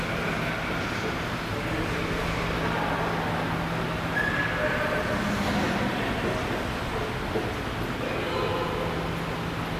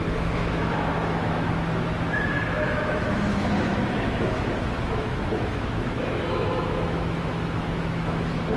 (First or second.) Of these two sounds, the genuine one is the first